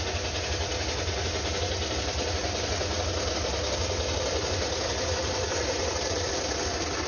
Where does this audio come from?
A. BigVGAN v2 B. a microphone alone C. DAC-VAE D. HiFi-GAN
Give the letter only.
B